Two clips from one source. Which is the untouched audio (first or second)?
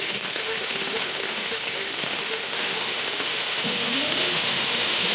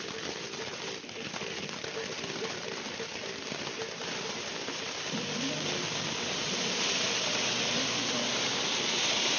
second